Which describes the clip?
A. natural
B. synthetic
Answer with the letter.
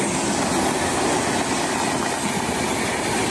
A